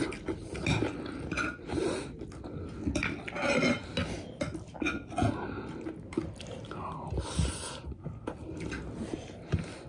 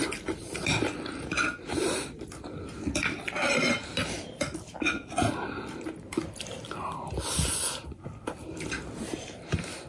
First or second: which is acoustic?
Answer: first